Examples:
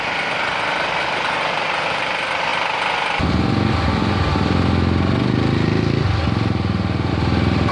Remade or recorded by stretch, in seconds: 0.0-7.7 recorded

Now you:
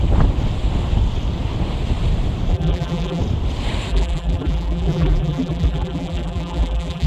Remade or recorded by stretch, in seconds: 0.0-2.5 recorded; 2.5-3.2 remade; 3.2-3.9 recorded; 3.9-7.1 remade

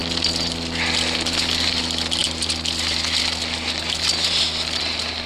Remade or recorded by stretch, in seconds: 0.0-5.3 recorded

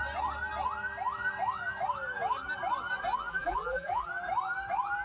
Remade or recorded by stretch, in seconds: 0.0-3.3 recorded; 3.3-4.1 remade; 4.1-5.0 recorded

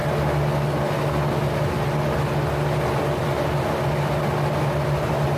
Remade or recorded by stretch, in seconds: 0.0-5.4 recorded

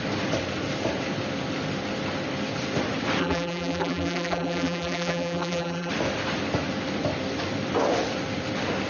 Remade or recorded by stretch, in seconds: 0.0-3.2 recorded; 3.2-5.9 remade; 5.9-8.9 recorded

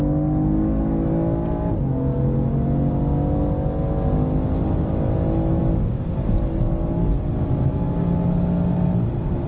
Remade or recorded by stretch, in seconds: 0.0-9.5 recorded

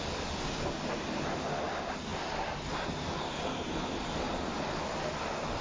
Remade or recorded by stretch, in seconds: 0.0-5.6 recorded